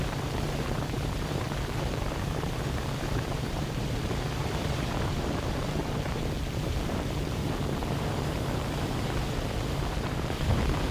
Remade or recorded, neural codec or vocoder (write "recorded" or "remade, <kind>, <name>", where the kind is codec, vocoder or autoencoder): remade, vocoder, BigVGAN v2